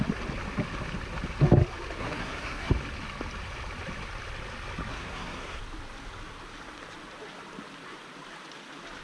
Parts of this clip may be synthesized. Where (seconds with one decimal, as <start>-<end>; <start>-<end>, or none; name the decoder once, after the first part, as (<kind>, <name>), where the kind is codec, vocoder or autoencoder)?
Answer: 2.0-2.7 (codec, SNAC); 4.9-5.6